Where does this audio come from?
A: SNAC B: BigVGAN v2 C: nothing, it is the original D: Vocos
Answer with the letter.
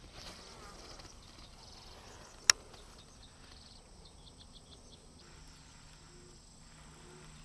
C